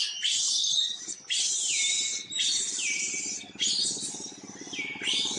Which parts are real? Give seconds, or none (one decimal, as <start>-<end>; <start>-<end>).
0.0-5.4